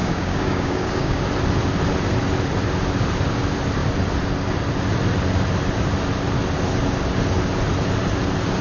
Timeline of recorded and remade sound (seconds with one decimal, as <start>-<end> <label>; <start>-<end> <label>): 0.0-1.2 remade; 1.2-8.6 recorded